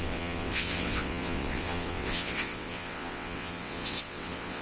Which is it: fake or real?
fake